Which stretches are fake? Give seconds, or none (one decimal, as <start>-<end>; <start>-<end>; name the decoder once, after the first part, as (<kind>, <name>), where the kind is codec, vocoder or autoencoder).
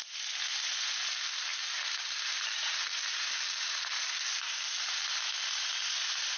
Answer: 1.5-5.3 (vocoder, BigVGAN v2)